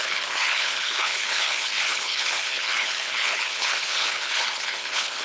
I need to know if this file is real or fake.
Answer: fake